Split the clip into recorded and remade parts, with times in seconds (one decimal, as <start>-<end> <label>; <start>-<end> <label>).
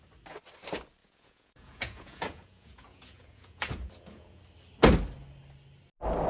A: 0.0-1.0 recorded; 1.0-4.4 remade; 4.4-6.3 recorded